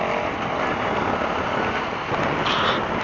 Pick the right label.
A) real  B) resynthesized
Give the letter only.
A